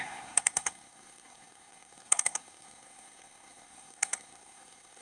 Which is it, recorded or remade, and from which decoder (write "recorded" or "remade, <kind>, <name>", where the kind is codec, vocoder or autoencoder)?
remade, codec, SNAC